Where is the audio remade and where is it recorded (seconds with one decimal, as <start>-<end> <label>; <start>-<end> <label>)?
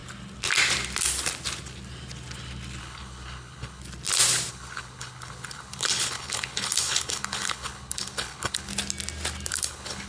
0.0-2.8 recorded; 2.8-3.8 remade; 3.8-4.5 recorded; 4.5-8.7 remade; 8.7-9.5 recorded; 9.5-10.1 remade